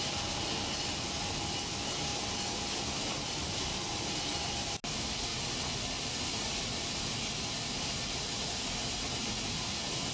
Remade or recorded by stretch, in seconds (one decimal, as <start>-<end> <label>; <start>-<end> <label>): 0.0-10.1 recorded